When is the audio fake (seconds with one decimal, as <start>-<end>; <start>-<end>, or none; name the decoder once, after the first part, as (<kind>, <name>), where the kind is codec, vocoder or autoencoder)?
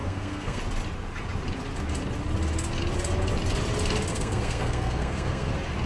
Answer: 0.0-0.6 (codec, SNAC); 4.1-5.5